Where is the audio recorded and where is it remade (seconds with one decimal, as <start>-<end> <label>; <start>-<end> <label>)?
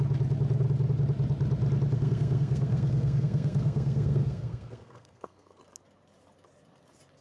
0.0-1.9 recorded; 1.9-5.6 remade; 5.6-7.2 recorded